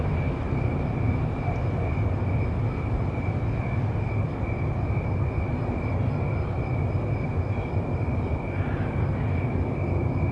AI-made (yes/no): no